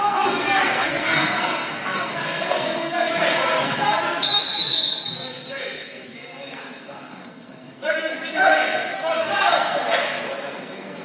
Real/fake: fake